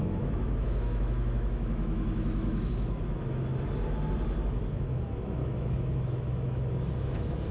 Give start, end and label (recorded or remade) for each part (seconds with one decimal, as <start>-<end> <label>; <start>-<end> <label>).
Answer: 0.0-3.5 remade; 3.5-4.6 recorded; 4.6-7.5 remade